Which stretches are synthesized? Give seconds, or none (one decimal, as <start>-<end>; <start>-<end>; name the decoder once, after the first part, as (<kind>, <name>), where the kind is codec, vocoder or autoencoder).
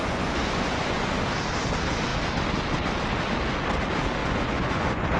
0.0-1.1 (vocoder, Vocos); 4.2-5.2